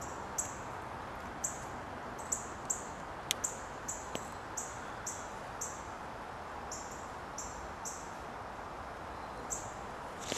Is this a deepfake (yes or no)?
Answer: no